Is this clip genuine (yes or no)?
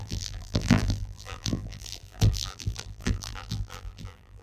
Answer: no